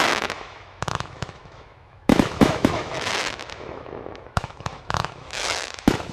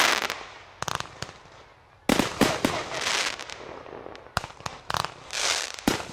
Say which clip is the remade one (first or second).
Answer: first